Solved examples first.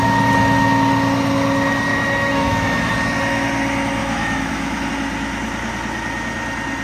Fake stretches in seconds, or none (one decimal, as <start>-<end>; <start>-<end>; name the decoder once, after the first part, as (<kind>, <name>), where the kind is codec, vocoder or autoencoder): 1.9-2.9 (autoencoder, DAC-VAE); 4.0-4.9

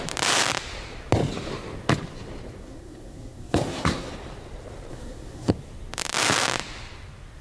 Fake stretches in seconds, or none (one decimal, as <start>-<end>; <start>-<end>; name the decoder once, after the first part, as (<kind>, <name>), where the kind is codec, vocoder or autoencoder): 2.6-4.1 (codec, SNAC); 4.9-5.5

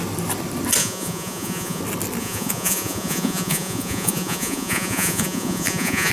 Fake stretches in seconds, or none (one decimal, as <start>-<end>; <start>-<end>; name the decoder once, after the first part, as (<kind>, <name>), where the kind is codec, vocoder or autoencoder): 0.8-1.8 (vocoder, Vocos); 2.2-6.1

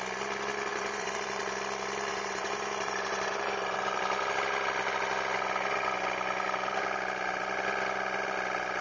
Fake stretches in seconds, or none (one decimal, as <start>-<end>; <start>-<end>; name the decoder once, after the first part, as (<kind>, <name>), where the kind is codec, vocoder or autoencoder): 0.7-1.4 (vocoder, BigVGAN v2); 2.1-4.0

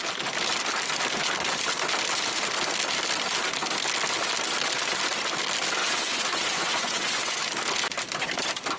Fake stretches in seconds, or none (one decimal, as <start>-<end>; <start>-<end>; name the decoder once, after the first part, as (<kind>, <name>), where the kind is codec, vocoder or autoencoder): 5.8-7.4 (vocoder, Vocos)

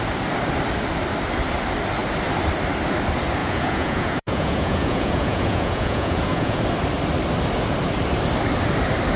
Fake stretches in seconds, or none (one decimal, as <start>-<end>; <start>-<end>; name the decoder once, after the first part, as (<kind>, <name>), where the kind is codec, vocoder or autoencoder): 3.4-6.6 (vocoder, Vocos)

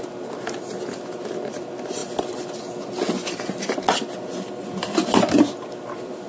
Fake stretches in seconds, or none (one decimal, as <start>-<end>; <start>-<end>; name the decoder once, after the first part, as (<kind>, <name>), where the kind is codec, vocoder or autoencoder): none

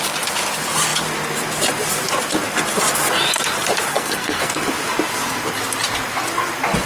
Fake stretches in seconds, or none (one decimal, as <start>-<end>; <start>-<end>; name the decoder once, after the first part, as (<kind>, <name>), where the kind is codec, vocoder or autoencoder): 3.9-4.7 (codec, SNAC)